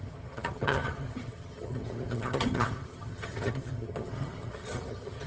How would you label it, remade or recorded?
remade